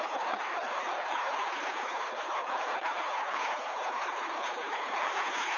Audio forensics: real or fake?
fake